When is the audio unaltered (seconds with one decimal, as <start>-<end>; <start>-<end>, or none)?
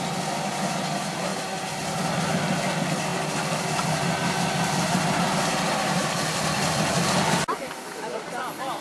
0.0-8.8